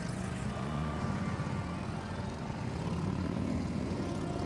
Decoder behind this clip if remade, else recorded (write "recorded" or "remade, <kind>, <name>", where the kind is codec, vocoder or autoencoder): remade, vocoder, Vocos